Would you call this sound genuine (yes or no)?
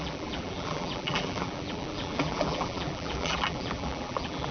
no